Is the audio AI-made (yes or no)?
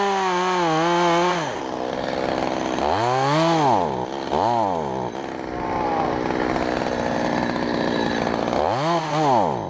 no